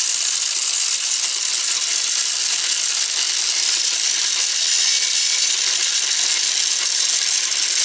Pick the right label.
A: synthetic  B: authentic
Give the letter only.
B